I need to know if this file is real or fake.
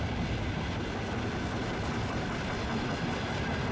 real